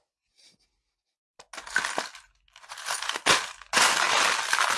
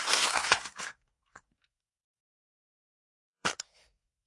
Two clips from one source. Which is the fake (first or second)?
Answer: second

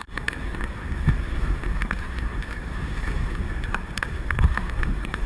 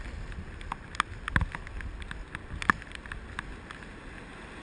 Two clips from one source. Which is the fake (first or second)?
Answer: first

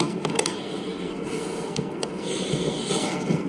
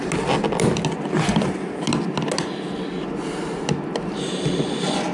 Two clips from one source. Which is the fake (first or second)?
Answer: first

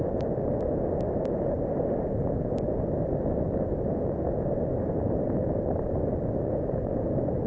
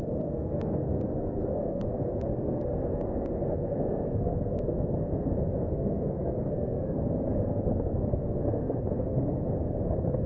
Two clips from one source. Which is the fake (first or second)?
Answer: second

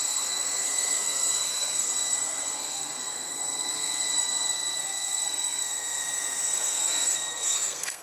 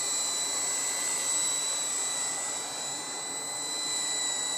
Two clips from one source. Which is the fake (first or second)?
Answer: first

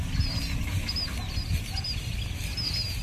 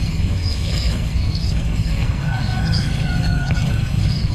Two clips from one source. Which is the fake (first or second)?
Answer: second